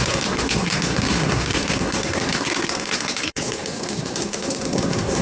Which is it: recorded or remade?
remade